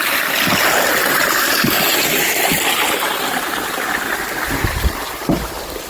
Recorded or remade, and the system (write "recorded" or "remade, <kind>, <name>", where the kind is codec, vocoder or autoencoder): remade, vocoder, BigVGAN v2